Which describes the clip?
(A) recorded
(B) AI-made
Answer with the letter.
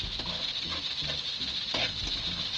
A